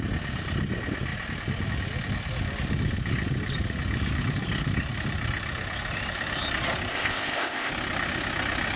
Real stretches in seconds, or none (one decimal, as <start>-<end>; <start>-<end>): 0.0-6.9; 7.7-8.8